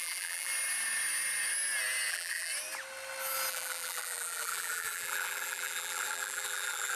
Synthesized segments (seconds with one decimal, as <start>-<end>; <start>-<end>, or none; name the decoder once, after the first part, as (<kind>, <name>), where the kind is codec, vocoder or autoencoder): 0.0-0.5 (vocoder, BigVGAN v2); 2.1-2.5; 3.5-7.0

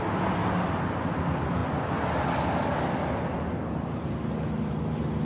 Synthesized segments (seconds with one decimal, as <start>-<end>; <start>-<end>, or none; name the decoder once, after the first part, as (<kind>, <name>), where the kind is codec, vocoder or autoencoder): 0.4-1.1 (vocoder, BigVGAN v2)

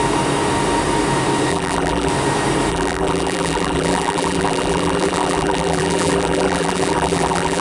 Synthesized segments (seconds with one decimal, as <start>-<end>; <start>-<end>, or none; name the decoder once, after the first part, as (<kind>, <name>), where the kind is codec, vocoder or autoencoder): 1.5-2.1 (vocoder, BigVGAN v2); 2.7-7.6